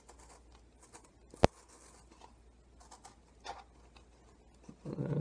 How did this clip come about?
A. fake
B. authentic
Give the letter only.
B